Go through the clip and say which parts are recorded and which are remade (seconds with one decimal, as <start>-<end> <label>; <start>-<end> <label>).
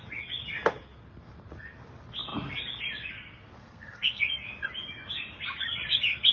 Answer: 0.0-3.6 recorded; 3.6-4.2 remade; 4.2-6.3 recorded